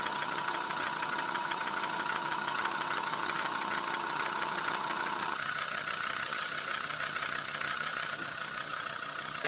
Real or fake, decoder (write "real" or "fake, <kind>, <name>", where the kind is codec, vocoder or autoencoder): fake, vocoder, HiFi-GAN